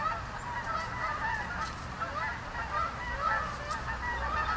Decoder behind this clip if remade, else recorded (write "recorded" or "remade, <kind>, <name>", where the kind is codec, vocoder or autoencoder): recorded